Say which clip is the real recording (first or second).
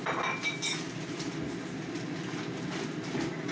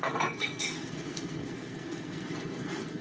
first